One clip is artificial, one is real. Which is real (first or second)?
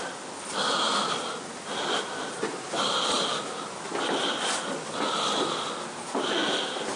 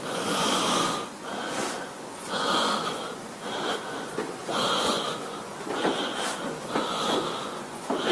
first